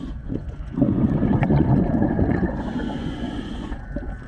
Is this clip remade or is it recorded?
remade